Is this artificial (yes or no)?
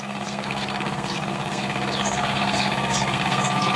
yes